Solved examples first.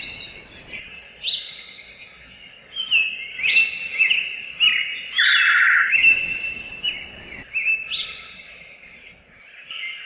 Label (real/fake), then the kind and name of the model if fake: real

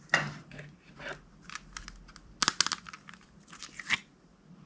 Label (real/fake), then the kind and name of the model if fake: real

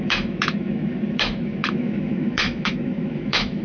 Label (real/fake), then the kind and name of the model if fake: fake, autoencoder, DAC-VAE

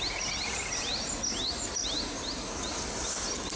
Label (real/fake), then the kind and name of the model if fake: real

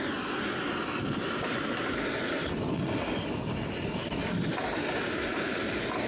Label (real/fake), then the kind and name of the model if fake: real